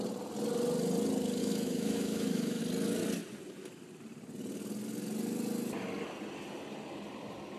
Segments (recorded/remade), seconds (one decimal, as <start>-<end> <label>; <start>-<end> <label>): 0.0-1.4 recorded; 1.4-2.6 remade; 2.6-7.6 recorded